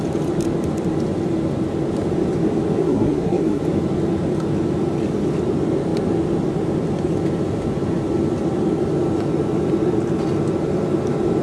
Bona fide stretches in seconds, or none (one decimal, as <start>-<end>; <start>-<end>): 0.0-2.8; 3.6-11.4